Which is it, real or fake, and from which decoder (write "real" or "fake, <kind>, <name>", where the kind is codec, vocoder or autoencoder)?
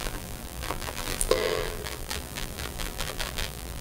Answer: fake, vocoder, BigVGAN v2